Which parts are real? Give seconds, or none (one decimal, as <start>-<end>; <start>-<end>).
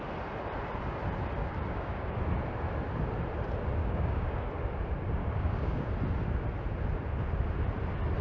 0.0-1.4; 2.2-3.8; 4.5-5.2; 5.9-8.2